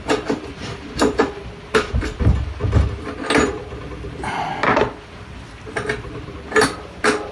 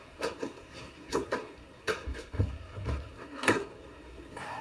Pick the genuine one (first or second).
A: first